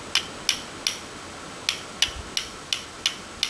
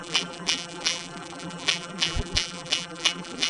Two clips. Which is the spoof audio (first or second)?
second